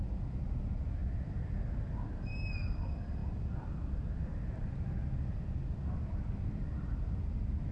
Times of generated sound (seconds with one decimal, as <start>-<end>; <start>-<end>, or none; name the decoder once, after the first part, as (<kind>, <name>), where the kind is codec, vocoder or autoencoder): 0.0-3.2 (vocoder, BigVGAN v2); 3.9-4.3; 6.5-7.7